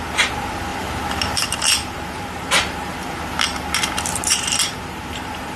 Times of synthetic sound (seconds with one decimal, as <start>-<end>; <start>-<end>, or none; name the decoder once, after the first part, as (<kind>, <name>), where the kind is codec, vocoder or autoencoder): 0.0-5.6 (vocoder, BigVGAN v2)